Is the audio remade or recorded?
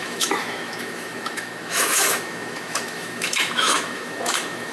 remade